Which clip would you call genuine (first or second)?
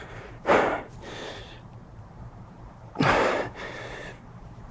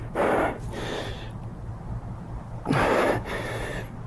second